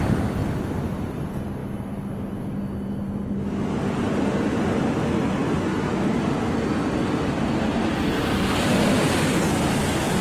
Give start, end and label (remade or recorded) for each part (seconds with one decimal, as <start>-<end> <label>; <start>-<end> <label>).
0.0-10.2 recorded